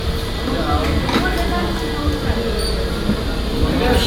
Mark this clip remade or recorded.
recorded